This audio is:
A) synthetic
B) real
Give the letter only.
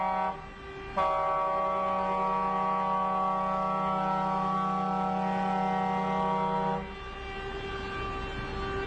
B